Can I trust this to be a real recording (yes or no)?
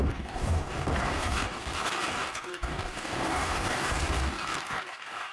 no